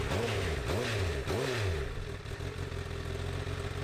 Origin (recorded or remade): recorded